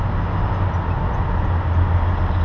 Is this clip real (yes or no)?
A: yes